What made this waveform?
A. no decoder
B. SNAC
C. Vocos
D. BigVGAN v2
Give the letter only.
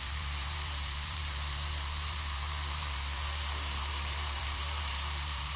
D